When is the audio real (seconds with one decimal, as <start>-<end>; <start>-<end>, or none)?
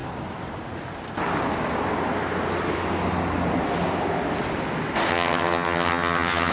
0.0-5.1